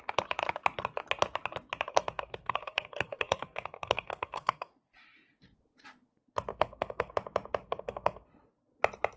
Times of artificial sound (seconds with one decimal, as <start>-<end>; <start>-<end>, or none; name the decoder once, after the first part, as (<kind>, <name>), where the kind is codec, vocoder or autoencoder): 1.9-4.7 (codec, SNAC); 6.5-7.1; 7.6-8.3